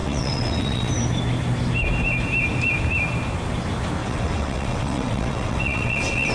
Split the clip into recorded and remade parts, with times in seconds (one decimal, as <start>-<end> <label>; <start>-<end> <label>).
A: 0.0-0.9 remade; 0.9-4.0 recorded; 4.0-6.3 remade